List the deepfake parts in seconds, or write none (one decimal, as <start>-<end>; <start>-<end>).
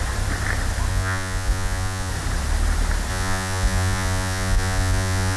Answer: 0.9-2.1; 3.1-5.4